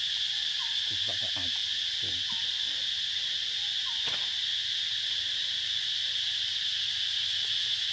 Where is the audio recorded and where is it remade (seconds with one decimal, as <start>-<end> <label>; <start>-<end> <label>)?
0.0-7.9 recorded